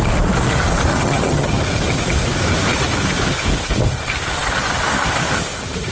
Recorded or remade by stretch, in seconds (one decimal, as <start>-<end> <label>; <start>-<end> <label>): 0.0-0.9 recorded; 0.9-1.6 remade; 1.6-5.9 recorded

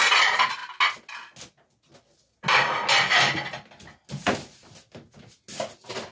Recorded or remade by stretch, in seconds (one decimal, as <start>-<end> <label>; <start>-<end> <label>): 0.0-6.1 recorded

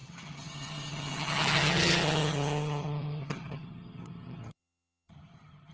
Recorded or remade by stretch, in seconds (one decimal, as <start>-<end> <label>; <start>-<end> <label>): 0.0-5.7 remade